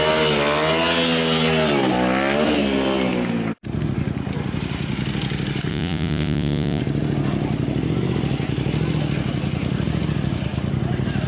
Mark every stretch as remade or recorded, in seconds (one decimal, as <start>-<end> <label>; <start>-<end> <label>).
0.0-5.7 recorded; 5.7-6.8 remade; 6.8-11.3 recorded